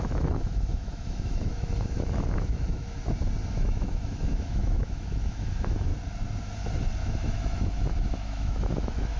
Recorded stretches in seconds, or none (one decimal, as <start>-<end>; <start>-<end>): 3.0-3.5; 5.9-7.0